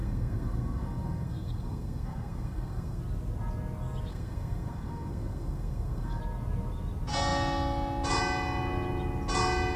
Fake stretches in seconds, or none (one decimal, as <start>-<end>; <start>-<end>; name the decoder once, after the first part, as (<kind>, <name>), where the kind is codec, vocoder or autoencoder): 0.0-3.0 (codec, SNAC); 4.1-6.2